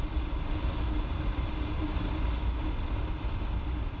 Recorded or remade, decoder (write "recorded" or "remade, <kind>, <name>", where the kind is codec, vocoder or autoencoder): recorded